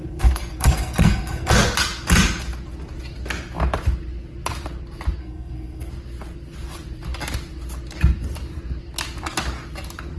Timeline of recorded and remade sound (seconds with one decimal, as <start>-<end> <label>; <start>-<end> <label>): 0.0-1.5 remade; 1.5-5.2 recorded; 5.2-5.9 remade; 5.9-10.2 recorded